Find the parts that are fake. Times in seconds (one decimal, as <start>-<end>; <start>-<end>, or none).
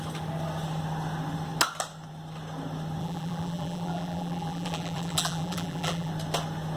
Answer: 3.0-6.1